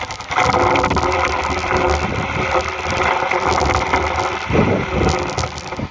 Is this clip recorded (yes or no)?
yes